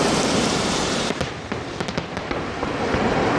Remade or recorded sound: remade